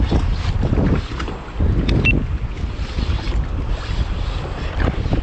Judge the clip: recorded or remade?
recorded